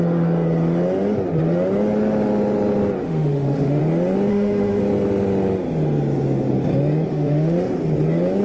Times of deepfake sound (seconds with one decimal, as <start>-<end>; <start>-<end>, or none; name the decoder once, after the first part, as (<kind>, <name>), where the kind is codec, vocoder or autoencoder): 3.0-3.8 (autoencoder, DAC-VAE); 4.3-4.8; 7.1-7.8